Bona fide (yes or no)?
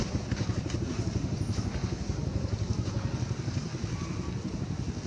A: yes